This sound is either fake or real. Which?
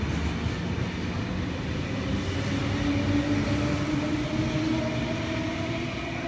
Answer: real